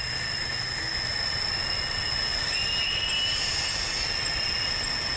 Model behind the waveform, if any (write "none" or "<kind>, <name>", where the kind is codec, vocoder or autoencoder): none